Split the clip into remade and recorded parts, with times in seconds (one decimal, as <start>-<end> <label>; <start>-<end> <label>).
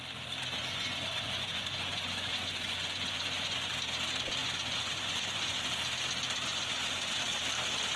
0.0-0.6 recorded; 0.6-3.7 remade; 3.7-4.4 recorded; 4.4-5.6 remade; 5.6-6.5 recorded; 6.5-7.2 remade; 7.2-8.0 recorded